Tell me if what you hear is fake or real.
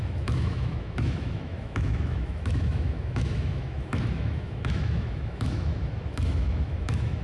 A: fake